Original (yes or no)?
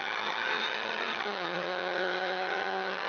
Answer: no